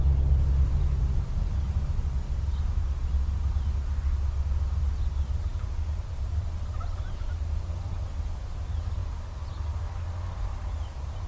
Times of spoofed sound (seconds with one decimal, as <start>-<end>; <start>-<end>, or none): none